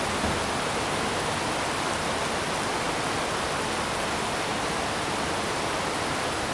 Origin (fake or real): real